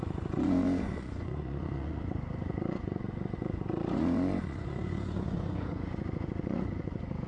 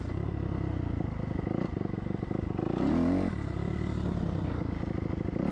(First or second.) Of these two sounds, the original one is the second